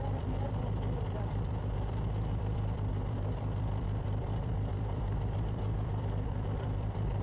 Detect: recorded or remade remade